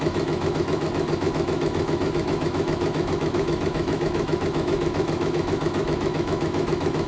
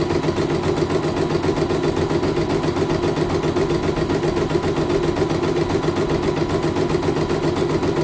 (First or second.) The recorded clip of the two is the second